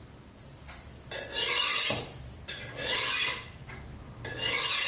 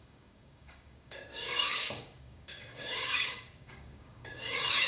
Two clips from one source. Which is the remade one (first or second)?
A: second